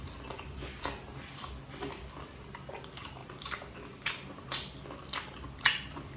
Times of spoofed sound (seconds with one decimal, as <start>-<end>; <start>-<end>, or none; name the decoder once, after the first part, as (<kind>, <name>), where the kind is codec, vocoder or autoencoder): none